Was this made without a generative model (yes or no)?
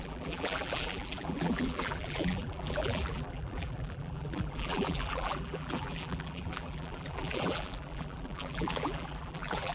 no